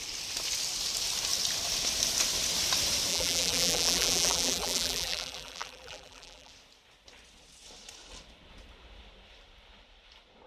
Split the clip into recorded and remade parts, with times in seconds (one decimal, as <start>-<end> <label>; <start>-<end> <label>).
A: 0.0-3.1 recorded; 3.1-6.5 remade; 6.5-10.5 recorded